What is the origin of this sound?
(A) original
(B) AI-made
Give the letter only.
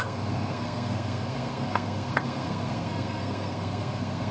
B